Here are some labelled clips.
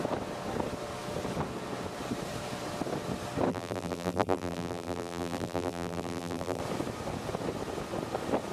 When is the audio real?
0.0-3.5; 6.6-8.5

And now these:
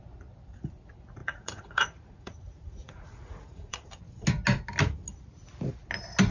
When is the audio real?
0.0-1.2; 3.9-6.3